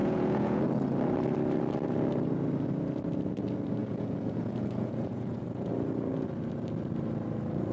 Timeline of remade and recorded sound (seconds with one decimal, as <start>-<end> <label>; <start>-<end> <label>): 0.0-0.6 remade; 0.6-3.8 recorded; 3.8-5.7 remade; 5.7-7.7 recorded